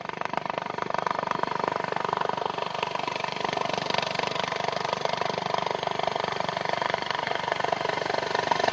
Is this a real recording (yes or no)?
yes